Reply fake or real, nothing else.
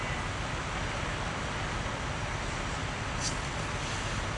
real